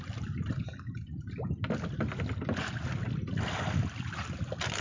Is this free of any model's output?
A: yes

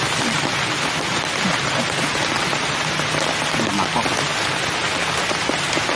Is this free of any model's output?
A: yes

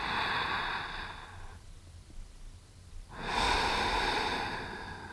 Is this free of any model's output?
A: yes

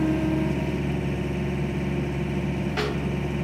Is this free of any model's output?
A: no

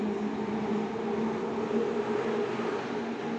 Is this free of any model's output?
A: yes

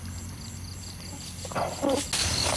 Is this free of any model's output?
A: yes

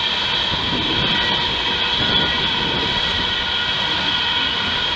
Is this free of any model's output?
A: yes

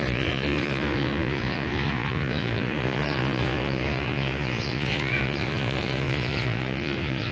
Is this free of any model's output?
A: no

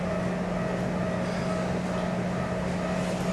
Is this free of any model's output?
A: yes